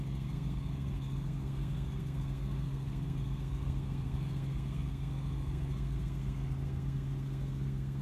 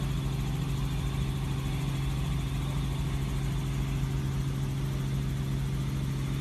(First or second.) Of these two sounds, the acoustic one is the second